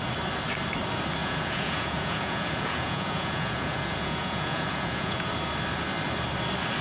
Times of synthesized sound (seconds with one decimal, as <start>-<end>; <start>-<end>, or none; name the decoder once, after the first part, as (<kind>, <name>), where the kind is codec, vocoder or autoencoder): 1.2-5.3 (vocoder, Vocos)